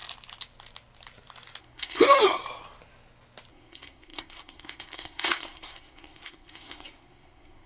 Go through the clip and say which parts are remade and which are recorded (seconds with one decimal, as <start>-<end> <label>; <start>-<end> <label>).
0.0-1.6 recorded; 1.6-2.4 remade; 2.4-3.5 recorded; 3.5-7.7 remade